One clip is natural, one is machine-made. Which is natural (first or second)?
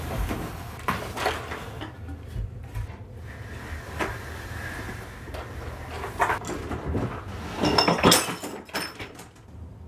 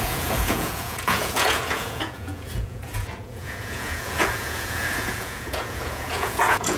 first